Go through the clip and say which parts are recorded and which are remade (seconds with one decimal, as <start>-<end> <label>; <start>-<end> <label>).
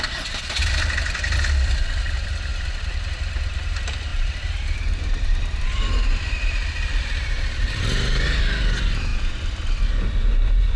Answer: 0.0-4.1 recorded; 4.1-7.8 remade; 7.8-9.1 recorded; 9.1-9.9 remade; 9.9-10.8 recorded